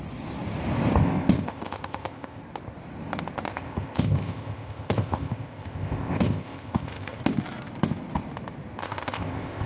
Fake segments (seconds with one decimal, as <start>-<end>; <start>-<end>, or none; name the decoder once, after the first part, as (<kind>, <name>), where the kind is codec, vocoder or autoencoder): 1.0-2.4 (codec, ZipCodec); 3.5-7.2; 8.8-9.7